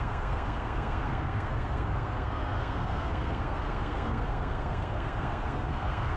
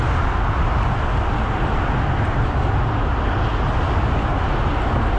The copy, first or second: first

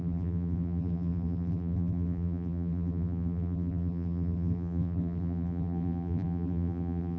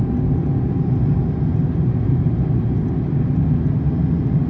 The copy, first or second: first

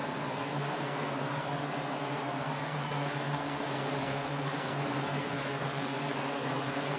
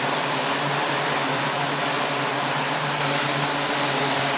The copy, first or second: first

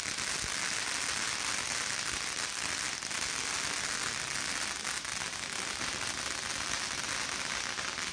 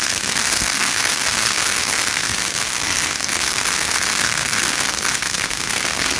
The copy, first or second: second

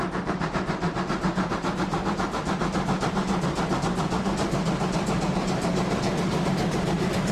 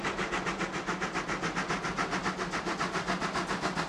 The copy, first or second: first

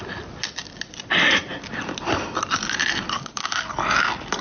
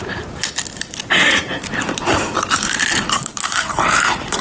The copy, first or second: second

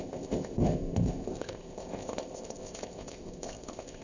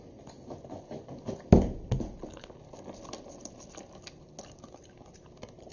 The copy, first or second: first